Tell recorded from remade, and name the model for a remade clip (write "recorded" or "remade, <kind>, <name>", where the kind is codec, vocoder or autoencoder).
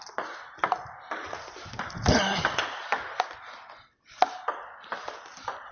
recorded